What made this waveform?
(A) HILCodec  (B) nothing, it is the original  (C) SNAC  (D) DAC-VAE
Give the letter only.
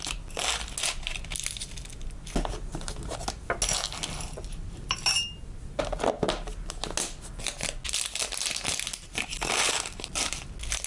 B